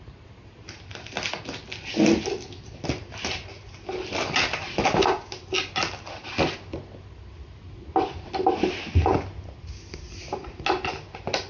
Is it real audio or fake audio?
real